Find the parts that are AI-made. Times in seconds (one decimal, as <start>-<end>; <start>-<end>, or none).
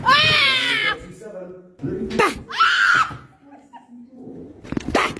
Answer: none